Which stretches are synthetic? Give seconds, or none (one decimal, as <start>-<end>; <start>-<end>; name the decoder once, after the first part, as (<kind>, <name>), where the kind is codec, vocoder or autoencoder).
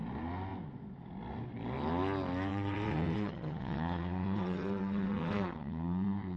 2.5-6.4 (vocoder, WaveNeXt)